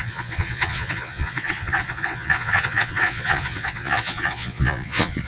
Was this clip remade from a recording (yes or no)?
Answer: yes